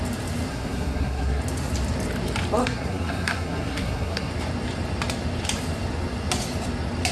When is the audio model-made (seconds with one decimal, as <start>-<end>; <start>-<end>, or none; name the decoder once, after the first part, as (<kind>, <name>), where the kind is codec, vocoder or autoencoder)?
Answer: 0.5-1.4 (codec, SNAC); 2.6-4.3